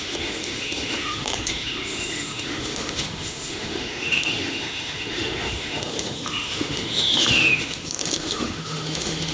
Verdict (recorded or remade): remade